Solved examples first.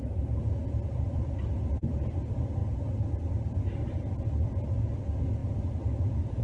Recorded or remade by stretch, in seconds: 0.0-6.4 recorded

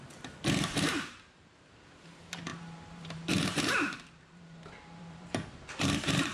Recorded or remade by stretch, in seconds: 0.0-6.3 remade

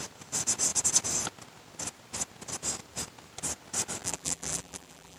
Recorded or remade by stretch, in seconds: 0.0-4.0 recorded; 4.0-5.2 remade

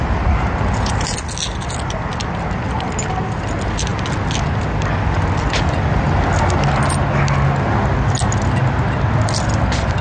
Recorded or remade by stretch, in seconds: 0.0-10.0 recorded

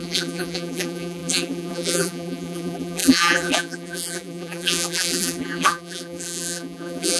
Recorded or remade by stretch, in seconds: 0.0-7.2 remade

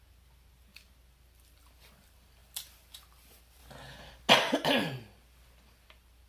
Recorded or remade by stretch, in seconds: 0.0-3.6 remade; 3.6-4.3 recorded; 4.3-6.3 remade

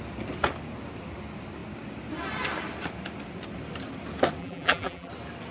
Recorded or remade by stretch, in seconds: 0.0-4.4 recorded; 4.4-5.1 remade; 5.1-5.5 recorded